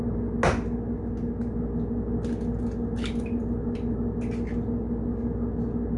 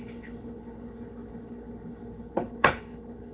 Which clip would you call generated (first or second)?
second